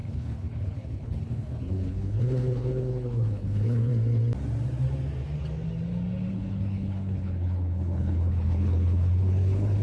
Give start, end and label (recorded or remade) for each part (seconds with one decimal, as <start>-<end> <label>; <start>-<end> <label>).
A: 0.0-3.9 remade; 3.9-6.3 recorded; 6.3-9.8 remade